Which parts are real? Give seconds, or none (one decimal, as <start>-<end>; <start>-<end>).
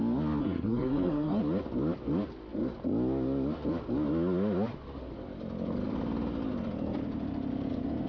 0.0-0.4; 1.4-8.1